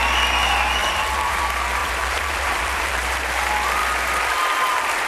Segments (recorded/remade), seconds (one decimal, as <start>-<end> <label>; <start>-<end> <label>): 0.0-0.8 recorded; 0.8-1.4 remade; 1.4-1.8 recorded; 1.8-3.2 remade; 3.2-5.1 recorded